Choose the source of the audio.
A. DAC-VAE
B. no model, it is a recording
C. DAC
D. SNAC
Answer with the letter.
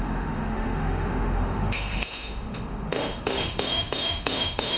A